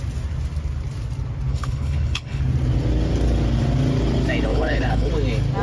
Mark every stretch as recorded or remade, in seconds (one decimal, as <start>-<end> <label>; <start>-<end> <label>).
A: 0.0-1.5 recorded; 1.5-2.4 remade; 2.4-4.5 recorded; 4.5-5.1 remade; 5.1-5.6 recorded